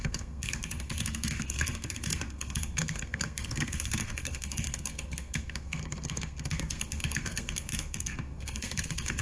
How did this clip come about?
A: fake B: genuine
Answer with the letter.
A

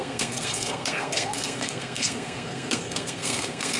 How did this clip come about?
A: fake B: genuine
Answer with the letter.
A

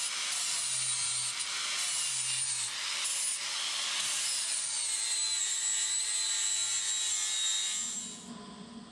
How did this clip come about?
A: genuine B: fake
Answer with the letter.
A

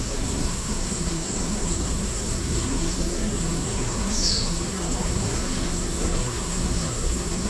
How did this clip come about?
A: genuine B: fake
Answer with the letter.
B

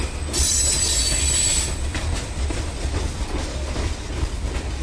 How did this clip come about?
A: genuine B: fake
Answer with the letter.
A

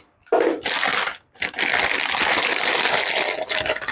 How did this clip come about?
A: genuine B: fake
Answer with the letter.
A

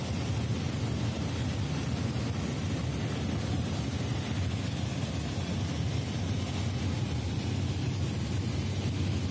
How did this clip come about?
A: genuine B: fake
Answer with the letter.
A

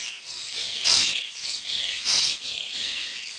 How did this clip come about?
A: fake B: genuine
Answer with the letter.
A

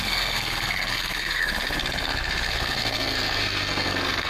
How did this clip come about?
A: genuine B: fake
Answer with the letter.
B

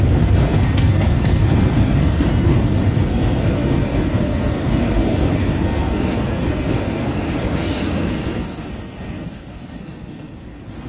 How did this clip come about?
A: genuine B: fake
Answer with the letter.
B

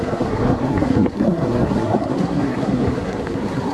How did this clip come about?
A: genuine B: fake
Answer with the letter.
B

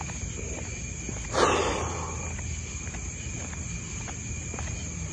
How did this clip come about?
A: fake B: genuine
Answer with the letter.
B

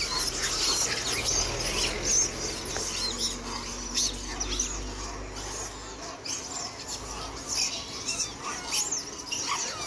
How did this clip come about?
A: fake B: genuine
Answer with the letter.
B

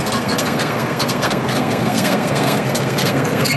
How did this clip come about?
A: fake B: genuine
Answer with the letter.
A